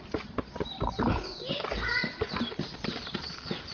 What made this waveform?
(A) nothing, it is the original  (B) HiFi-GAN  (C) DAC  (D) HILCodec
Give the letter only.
A